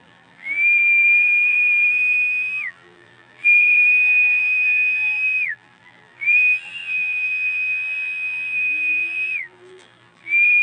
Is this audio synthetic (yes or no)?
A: yes